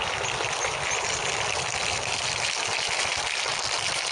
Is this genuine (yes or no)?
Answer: yes